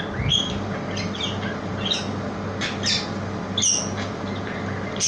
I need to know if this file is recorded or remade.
recorded